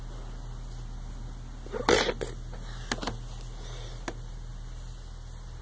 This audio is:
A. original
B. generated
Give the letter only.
A